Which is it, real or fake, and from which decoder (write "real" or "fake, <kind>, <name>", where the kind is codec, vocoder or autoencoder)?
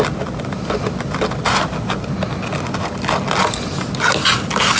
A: real